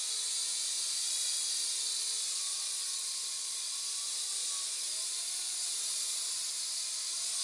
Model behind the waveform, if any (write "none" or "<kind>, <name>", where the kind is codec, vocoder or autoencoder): none